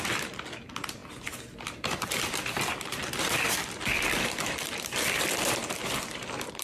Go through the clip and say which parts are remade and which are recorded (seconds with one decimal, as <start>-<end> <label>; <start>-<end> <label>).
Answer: 0.0-6.6 remade